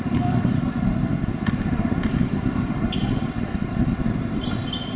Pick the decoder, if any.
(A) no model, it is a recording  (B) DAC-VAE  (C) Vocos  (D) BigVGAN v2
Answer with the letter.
A